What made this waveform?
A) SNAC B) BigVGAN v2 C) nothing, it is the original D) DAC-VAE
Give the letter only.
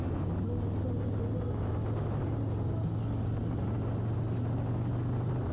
C